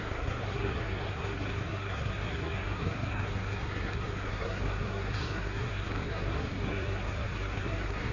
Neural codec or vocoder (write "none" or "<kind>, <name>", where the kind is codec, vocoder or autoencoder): codec, SNAC